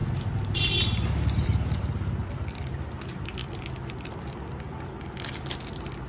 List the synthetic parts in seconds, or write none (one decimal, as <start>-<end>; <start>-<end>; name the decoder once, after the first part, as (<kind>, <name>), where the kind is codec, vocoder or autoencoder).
none